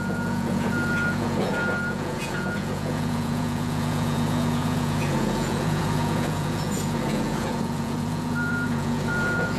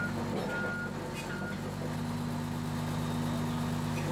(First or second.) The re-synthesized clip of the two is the first